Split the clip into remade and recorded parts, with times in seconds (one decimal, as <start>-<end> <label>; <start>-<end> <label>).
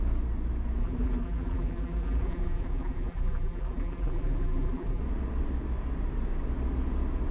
0.0-0.8 recorded; 0.8-5.0 remade; 5.0-7.3 recorded